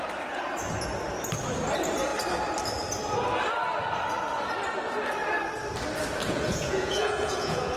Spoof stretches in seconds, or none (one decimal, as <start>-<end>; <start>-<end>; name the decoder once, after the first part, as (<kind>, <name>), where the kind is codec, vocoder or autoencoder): 6.2-7.8 (vocoder, Vocos)